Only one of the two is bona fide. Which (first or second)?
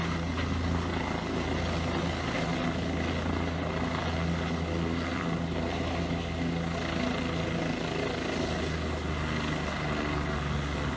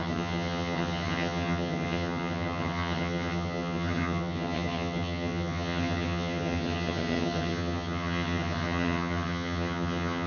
first